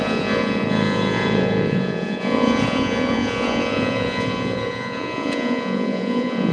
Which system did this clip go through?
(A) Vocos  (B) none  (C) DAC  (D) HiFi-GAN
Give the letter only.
A